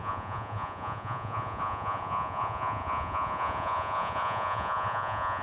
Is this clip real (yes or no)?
no